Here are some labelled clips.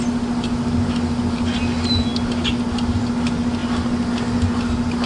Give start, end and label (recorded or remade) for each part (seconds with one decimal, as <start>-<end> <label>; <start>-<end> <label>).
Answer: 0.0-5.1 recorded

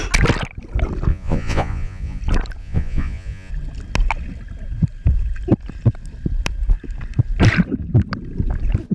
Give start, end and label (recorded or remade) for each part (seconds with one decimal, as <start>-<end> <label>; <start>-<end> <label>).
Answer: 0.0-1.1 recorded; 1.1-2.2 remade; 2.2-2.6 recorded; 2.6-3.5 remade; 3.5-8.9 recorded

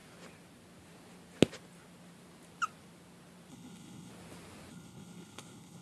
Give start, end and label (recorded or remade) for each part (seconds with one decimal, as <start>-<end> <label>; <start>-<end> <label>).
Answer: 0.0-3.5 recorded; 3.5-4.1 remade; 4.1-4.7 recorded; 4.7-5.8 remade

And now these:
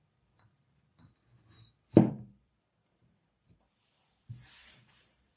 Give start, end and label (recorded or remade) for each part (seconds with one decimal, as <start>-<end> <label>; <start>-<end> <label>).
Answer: 0.0-0.9 remade; 0.9-2.1 recorded; 2.1-5.4 remade

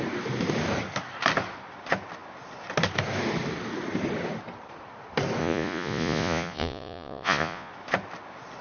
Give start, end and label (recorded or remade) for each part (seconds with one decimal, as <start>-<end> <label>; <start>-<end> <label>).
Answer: 0.0-5.4 recorded; 5.4-7.7 remade; 7.7-8.6 recorded